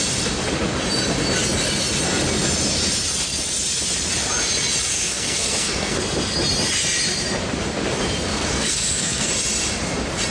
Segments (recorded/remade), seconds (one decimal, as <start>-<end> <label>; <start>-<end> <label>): 0.0-4.9 recorded; 4.9-6.0 remade; 6.0-8.3 recorded; 8.3-9.3 remade; 9.3-10.3 recorded